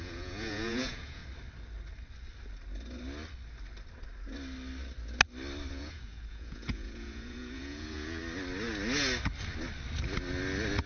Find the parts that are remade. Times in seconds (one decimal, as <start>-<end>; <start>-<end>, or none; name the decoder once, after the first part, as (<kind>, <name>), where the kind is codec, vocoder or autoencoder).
0.0-1.2 (vocoder, Vocos); 5.7-8.2